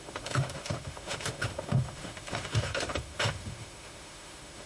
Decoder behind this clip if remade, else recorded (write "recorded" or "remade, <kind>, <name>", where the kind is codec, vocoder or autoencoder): remade, autoencoder, DAC-VAE